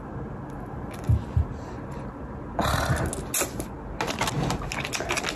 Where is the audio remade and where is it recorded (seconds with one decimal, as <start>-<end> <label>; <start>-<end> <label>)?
0.0-5.4 recorded